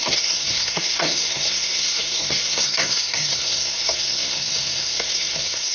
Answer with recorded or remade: remade